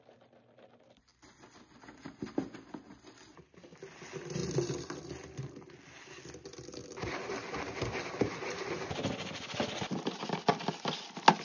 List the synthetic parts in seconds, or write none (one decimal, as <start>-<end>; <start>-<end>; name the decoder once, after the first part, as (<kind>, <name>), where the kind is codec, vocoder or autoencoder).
1.1-2.3 (vocoder, BigVGAN v2); 4.4-6.1; 8.4-9.5